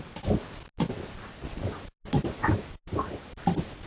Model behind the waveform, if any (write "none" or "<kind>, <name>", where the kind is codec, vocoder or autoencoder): none